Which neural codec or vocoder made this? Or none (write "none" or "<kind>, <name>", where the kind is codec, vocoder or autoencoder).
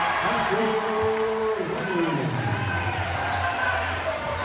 vocoder, BigVGAN v2